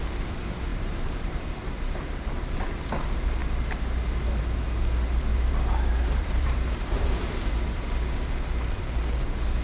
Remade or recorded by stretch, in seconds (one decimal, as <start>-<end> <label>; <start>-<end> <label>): 0.0-0.7 recorded; 0.7-1.2 remade; 1.2-1.6 recorded; 1.6-2.3 remade; 2.3-5.3 recorded; 5.3-7.9 remade; 7.9-9.6 recorded